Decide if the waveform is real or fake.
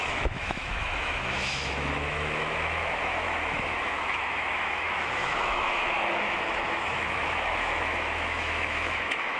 fake